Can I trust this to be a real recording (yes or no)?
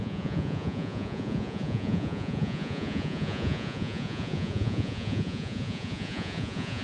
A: no